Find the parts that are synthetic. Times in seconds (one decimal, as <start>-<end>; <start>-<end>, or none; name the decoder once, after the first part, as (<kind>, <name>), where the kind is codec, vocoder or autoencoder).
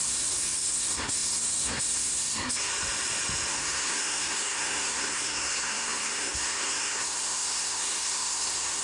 0.0-2.7 (codec, SNAC); 3.5-8.8